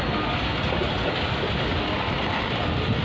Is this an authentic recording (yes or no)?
yes